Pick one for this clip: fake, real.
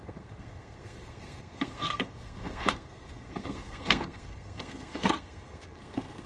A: fake